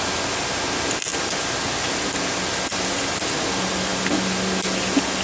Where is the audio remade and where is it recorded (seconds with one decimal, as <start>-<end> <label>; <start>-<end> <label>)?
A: 0.0-5.2 recorded